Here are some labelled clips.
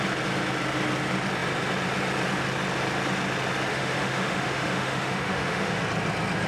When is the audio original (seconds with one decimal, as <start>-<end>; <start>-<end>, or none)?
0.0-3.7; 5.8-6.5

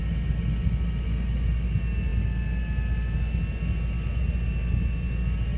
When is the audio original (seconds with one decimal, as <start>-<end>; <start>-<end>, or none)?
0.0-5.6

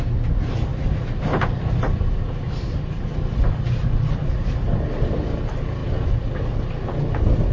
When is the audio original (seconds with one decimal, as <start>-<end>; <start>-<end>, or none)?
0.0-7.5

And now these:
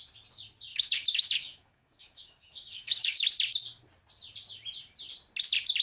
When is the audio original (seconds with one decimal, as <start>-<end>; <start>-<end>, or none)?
0.0-0.7; 3.2-5.8

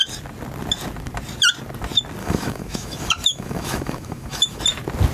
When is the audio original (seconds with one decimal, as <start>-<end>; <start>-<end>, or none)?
0.0-2.2; 4.6-5.1

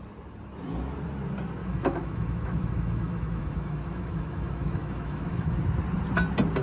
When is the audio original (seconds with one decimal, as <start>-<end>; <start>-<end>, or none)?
0.0-1.6; 5.6-6.6